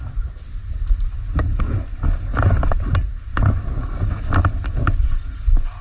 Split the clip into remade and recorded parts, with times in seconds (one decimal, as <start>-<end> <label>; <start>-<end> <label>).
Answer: 0.0-5.8 recorded